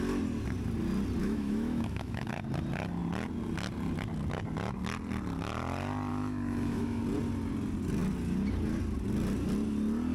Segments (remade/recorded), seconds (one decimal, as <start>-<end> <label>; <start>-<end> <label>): 0.0-1.2 recorded; 1.2-2.3 remade; 2.3-6.1 recorded; 6.1-7.0 remade; 7.0-10.1 recorded